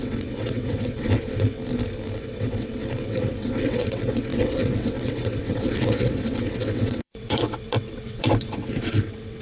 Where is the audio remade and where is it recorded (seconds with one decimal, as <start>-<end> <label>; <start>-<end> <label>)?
0.0-1.6 remade; 1.6-2.2 recorded; 2.2-9.4 remade